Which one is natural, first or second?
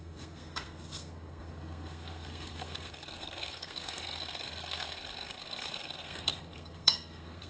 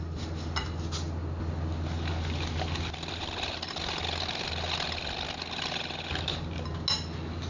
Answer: second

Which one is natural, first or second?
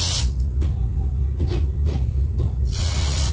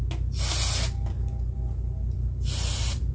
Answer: second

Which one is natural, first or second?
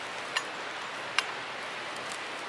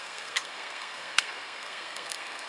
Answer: first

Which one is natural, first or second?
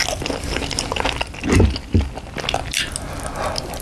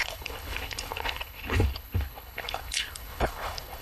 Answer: first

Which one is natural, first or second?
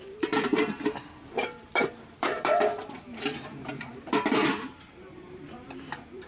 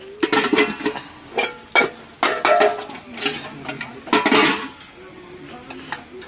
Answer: second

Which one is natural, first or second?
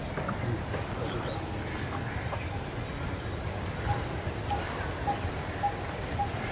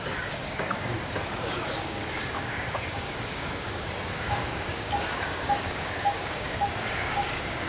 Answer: first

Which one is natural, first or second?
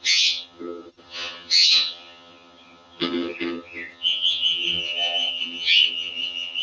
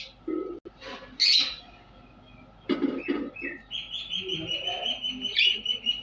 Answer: second